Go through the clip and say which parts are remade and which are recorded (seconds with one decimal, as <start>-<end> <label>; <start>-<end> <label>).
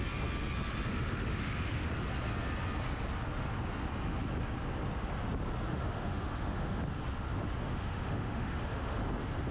0.0-0.9 recorded; 0.9-1.9 remade; 1.9-5.7 recorded; 5.7-6.8 remade; 6.8-7.6 recorded; 7.6-9.0 remade; 9.0-9.5 recorded